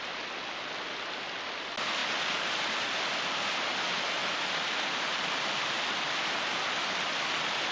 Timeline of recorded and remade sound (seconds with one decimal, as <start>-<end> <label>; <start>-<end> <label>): 0.0-7.7 recorded